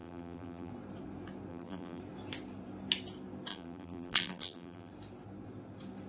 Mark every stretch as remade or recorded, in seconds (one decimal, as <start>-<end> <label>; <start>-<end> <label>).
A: 0.0-0.7 remade; 0.7-1.5 recorded; 1.5-2.0 remade; 2.0-3.5 recorded; 3.5-4.9 remade; 4.9-6.1 recorded